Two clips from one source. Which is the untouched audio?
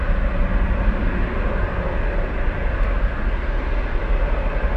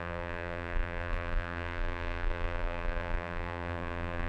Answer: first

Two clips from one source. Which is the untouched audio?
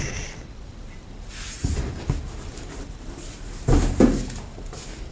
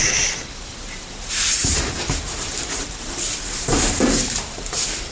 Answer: first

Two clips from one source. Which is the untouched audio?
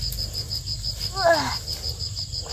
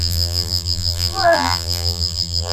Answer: first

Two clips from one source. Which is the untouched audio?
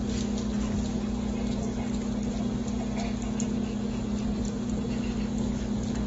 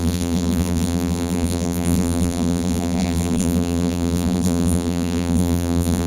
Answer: first